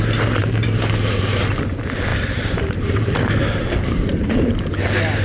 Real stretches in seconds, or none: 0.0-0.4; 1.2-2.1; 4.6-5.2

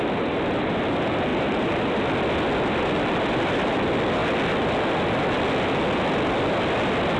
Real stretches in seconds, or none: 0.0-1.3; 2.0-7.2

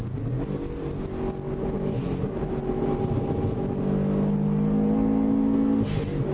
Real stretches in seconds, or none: 0.0-2.6; 3.4-6.3

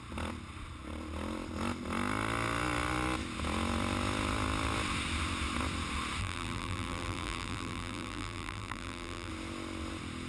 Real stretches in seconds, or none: 0.0-6.2; 9.3-10.3

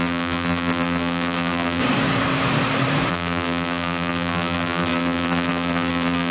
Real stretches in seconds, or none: 1.8-3.1